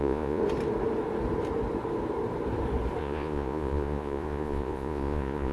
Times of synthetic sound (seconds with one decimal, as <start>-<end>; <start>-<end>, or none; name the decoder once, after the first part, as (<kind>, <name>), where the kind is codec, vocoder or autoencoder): 0.0-0.4 (vocoder, Vocos); 3.0-5.5